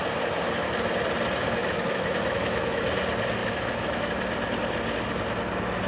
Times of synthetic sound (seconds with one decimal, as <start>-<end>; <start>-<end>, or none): 1.6-2.8; 3.4-4.1